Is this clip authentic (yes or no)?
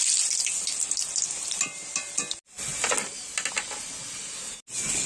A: yes